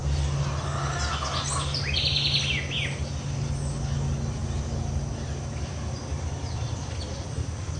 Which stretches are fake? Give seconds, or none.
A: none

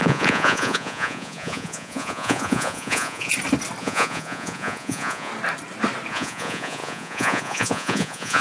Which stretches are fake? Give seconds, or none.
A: 0.0-3.3 (vocoder, Vocos); 3.8-5.3; 6.1-8.4